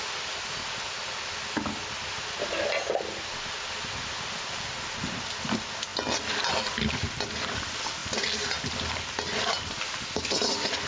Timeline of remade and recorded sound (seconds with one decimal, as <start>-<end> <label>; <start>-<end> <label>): 0.0-10.9 recorded